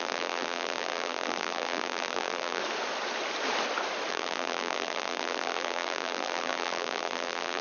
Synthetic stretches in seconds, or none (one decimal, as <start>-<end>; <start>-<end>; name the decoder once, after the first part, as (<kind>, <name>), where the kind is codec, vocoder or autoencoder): 0.0-2.6 (vocoder, BigVGAN v2); 4.1-7.6